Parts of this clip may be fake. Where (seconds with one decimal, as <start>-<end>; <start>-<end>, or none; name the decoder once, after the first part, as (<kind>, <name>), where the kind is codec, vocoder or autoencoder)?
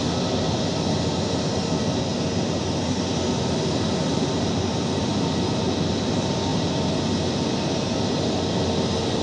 0.0-9.2 (vocoder, BigVGAN v2)